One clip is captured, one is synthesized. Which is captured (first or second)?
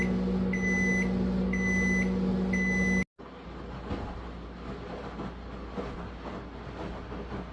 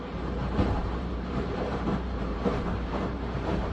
first